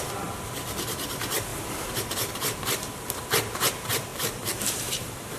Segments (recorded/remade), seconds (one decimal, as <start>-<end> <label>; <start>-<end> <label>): 0.0-5.4 remade